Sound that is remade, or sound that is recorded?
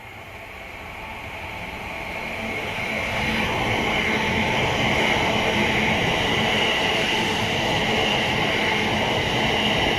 recorded